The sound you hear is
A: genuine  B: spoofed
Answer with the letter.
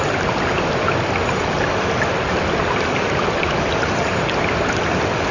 A